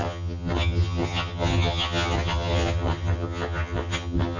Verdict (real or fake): fake